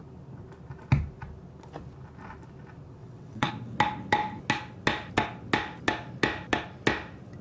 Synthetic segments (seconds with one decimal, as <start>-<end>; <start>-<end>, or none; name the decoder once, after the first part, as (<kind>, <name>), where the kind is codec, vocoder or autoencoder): 3.0-3.5 (vocoder, WaveNeXt)